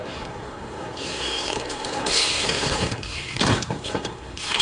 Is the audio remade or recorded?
remade